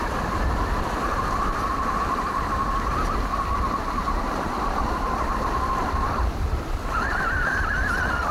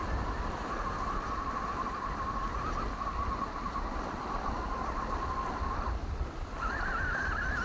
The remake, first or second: first